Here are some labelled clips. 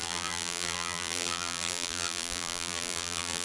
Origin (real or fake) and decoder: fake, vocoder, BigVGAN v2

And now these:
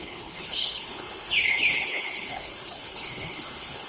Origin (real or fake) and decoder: fake, codec, HILCodec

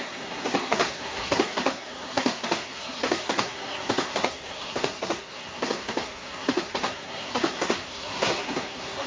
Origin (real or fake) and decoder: fake, codec, SNAC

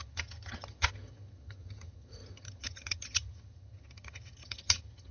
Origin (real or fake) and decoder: fake, vocoder, HiFi-GAN